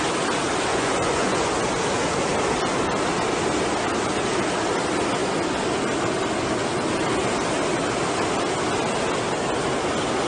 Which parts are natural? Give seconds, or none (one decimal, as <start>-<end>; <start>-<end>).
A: 0.0-0.7; 1.5-10.3